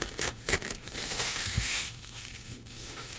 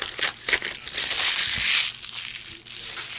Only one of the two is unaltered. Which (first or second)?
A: second